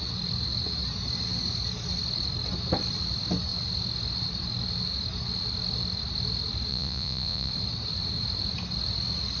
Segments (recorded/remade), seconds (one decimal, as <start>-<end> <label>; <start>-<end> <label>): 0.0-6.7 recorded; 6.7-7.5 remade; 7.5-9.4 recorded